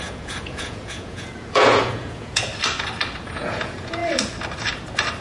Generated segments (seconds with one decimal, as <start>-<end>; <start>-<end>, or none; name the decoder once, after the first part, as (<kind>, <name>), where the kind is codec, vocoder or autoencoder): 0.0-2.5 (vocoder, Vocos); 3.2-4.0